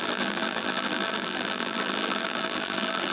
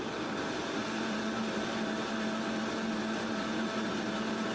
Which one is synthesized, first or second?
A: first